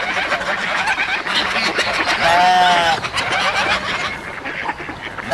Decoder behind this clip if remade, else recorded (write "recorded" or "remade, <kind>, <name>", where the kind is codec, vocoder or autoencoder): recorded